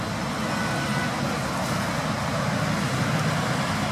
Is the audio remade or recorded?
recorded